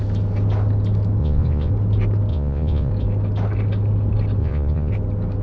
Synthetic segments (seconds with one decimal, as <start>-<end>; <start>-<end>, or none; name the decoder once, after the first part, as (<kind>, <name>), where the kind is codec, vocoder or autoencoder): 1.2-1.7 (vocoder, Vocos); 2.3-2.9; 4.4-4.9